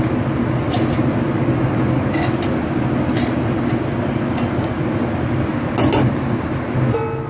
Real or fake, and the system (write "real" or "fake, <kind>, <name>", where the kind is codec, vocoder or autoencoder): real